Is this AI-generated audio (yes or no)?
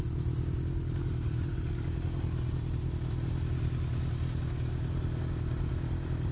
no